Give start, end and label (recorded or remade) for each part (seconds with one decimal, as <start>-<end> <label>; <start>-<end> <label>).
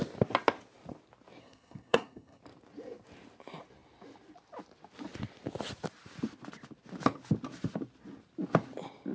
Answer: 0.0-1.4 recorded; 1.4-2.4 remade; 2.4-9.1 recorded